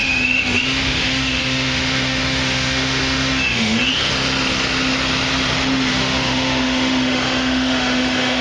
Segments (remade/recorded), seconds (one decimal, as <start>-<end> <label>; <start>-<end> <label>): 0.0-3.9 remade; 3.9-5.9 recorded; 5.9-8.4 remade